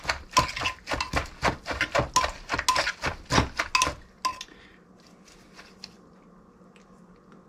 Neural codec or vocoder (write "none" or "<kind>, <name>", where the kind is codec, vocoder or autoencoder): none